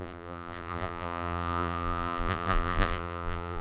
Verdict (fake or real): fake